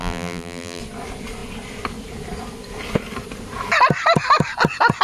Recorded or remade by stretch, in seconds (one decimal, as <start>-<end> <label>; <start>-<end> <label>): 0.0-0.8 remade; 0.8-5.0 recorded